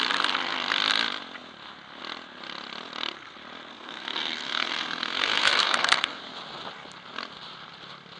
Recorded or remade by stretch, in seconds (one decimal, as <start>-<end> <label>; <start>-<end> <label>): 0.0-3.7 recorded; 3.7-6.2 remade; 6.2-8.2 recorded